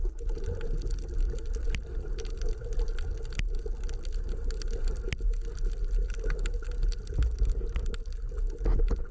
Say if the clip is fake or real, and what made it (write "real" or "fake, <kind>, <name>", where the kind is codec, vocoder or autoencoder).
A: real